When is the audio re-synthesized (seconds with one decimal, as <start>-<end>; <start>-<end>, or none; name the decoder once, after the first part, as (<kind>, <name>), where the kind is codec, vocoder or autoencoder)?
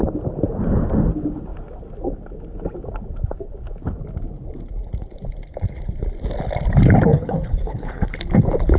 7.1-8.2 (codec, HILCodec)